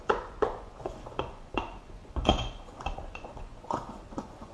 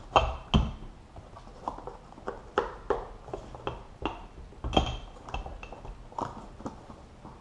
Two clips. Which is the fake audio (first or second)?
first